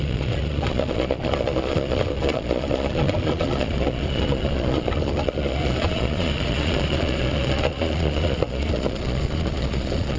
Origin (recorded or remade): remade